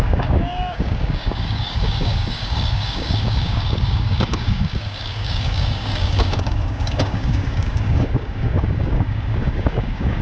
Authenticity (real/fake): fake